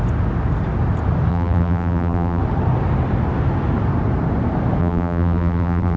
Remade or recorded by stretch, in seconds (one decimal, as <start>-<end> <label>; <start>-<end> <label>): 0.0-1.3 recorded; 1.3-2.4 remade; 2.4-4.8 recorded; 4.8-6.0 remade